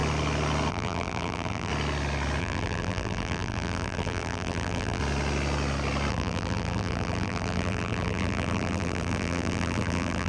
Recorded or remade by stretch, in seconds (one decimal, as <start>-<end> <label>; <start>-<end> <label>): 0.0-0.7 recorded; 0.7-1.7 remade; 1.7-2.4 recorded; 2.4-5.0 remade; 5.0-6.1 recorded; 6.1-10.3 remade

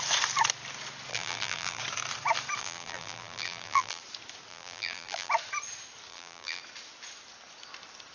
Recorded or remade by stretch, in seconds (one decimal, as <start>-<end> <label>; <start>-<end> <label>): 0.0-1.1 recorded; 1.1-1.8 remade; 1.8-2.6 recorded; 2.6-4.0 remade; 4.0-4.5 recorded; 4.5-5.3 remade; 5.3-6.1 recorded; 6.1-6.6 remade; 6.6-8.1 recorded